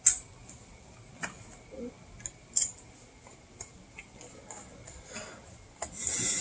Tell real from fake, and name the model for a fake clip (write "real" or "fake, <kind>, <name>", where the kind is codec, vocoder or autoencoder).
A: real